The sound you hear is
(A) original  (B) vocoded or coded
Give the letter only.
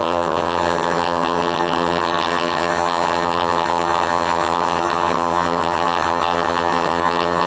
B